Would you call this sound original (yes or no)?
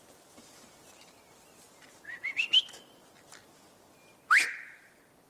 yes